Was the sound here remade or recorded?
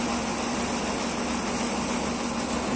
recorded